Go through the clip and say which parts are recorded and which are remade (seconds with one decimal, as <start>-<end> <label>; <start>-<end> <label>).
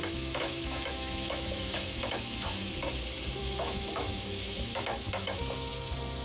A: 0.0-2.7 remade; 2.7-3.4 recorded; 3.4-5.4 remade; 5.4-6.2 recorded